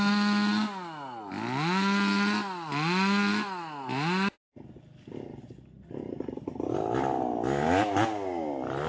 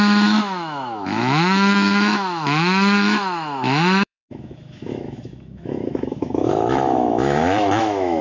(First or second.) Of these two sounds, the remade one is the second